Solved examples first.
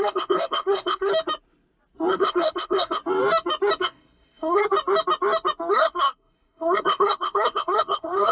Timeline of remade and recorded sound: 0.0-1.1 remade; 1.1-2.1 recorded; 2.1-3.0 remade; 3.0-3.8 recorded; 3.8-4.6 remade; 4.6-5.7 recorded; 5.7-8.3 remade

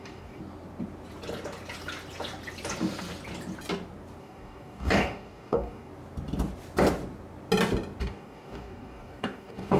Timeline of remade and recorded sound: 0.0-0.4 remade; 0.4-4.2 recorded; 4.2-5.9 remade; 5.9-8.0 recorded; 8.0-9.8 remade

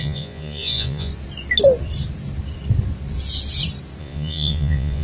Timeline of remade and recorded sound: 0.0-1.1 remade; 1.1-4.0 recorded; 4.0-5.0 remade

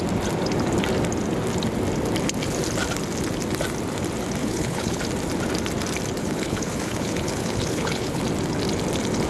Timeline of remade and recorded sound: 0.0-4.4 recorded; 4.4-5.0 remade; 5.0-6.2 recorded; 6.2-8.2 remade; 8.2-9.3 recorded

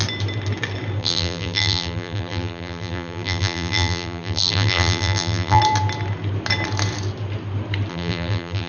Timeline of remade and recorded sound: 0.0-1.0 recorded; 1.0-5.6 remade; 5.6-7.9 recorded; 7.9-8.7 remade

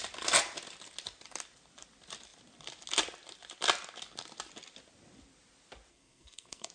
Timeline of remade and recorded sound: 0.0-5.9 recorded; 5.9-6.7 remade